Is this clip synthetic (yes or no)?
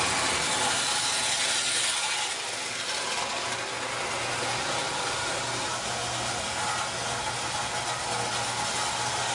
no